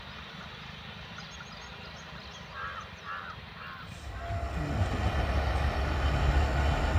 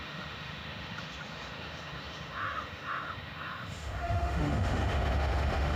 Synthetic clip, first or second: second